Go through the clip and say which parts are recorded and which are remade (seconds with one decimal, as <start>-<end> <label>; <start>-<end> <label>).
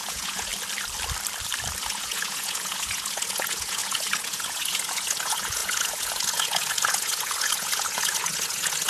0.0-0.5 remade; 0.5-1.8 recorded; 1.8-8.9 remade